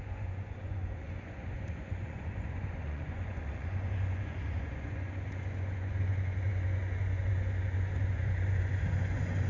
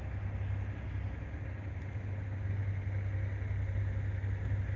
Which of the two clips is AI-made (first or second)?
first